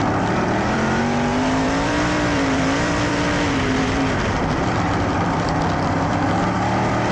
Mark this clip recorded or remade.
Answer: remade